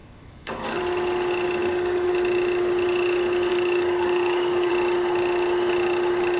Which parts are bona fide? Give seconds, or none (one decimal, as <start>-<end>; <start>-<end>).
0.8-1.6; 2.1-3.5; 4.7-6.4